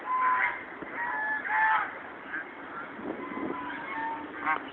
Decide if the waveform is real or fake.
real